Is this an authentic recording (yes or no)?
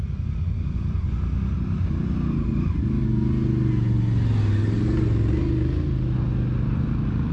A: yes